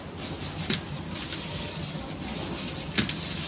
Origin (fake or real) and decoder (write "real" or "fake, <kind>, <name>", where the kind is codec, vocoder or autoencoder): real